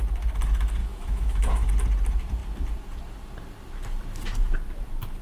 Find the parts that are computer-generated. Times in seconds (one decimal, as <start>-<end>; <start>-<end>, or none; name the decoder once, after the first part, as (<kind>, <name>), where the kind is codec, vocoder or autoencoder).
0.8-1.7 (autoencoder, DAC-VAE)